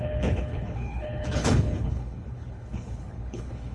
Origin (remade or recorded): remade